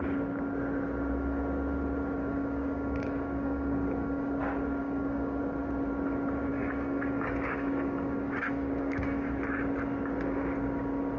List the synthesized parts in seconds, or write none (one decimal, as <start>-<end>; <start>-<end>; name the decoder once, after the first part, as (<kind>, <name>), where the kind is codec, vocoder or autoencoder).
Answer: 2.2-4.3 (codec, DAC); 4.8-5.4; 6.5-9.3